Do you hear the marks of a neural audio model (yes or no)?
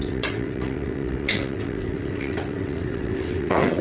yes